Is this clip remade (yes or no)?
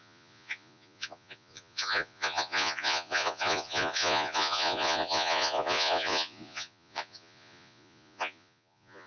yes